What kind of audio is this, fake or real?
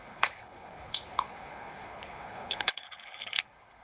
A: fake